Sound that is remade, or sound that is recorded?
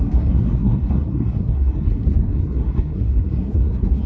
remade